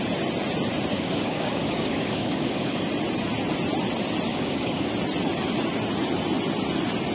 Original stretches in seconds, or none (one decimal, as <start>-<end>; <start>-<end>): 0.0-0.9; 2.8-4.3; 4.9-7.1